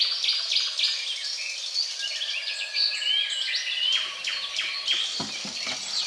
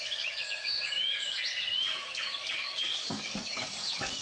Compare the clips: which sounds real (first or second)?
first